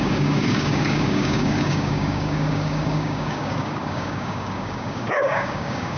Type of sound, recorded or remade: remade